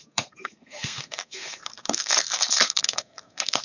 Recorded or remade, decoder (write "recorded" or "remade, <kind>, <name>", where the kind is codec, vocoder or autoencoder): remade, codec, SNAC